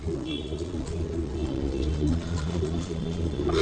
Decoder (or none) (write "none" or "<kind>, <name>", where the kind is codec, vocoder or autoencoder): vocoder, Vocos